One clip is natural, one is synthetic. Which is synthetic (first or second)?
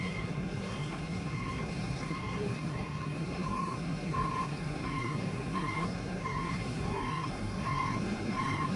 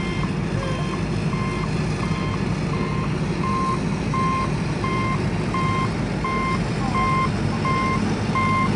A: first